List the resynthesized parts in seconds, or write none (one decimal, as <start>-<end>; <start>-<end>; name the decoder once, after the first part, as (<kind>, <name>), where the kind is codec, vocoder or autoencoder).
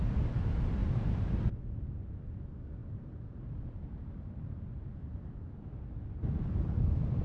0.8-1.3 (vocoder, BigVGAN v2); 2.8-4.9